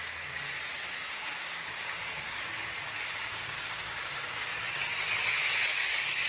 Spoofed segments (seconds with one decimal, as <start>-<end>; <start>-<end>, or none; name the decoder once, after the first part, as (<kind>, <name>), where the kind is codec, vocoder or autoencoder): 0.7-4.5 (codec, DAC); 5.7-6.3

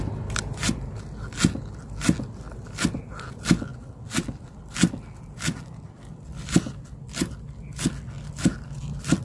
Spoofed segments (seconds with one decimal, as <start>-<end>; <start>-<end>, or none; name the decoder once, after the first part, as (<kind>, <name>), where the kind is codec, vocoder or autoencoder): none